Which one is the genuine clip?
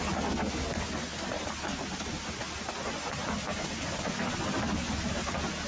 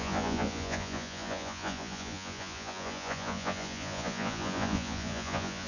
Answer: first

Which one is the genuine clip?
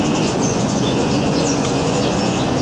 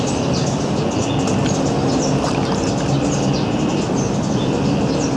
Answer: second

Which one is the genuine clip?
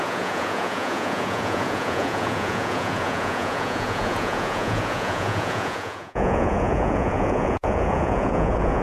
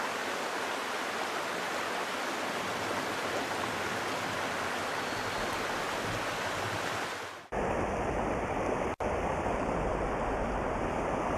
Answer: second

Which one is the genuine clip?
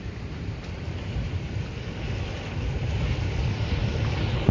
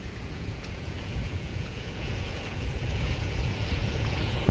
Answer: first